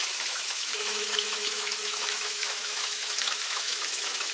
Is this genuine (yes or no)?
no